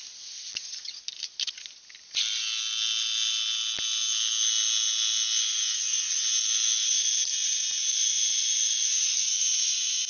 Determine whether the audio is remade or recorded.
recorded